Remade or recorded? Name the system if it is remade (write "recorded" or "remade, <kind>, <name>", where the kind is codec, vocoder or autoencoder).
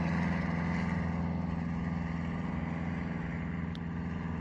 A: recorded